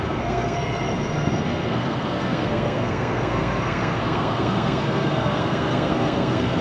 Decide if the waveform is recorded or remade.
remade